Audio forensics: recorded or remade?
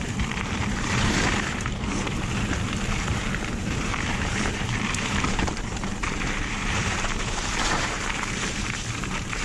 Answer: remade